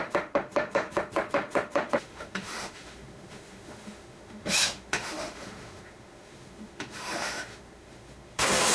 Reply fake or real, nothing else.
fake